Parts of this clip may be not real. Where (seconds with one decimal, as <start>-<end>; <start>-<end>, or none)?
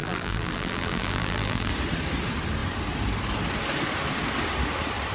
0.0-1.7